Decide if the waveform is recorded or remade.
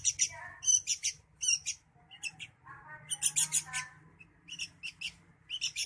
recorded